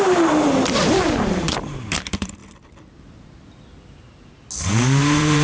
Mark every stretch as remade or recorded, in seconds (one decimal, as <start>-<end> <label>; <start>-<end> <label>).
0.0-2.4 remade; 2.4-5.0 recorded; 5.0-5.4 remade